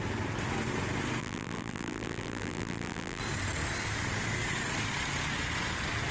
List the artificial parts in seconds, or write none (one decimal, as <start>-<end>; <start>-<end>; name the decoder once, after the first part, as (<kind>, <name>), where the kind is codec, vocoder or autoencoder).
1.2-3.2 (vocoder, BigVGAN v2)